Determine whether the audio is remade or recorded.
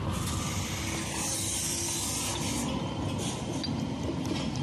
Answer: recorded